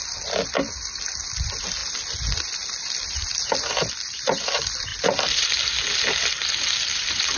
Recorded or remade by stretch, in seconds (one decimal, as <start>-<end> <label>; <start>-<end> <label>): 0.0-7.4 remade